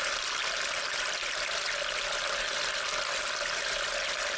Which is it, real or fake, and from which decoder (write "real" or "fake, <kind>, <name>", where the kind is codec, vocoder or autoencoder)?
real